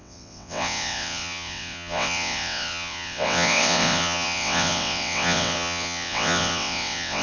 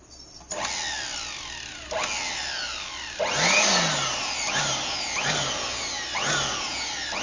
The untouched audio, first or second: second